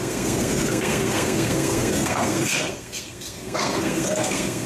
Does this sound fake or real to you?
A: fake